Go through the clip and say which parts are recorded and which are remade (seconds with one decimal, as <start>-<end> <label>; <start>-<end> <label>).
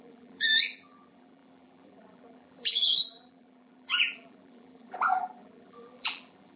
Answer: 0.0-6.6 remade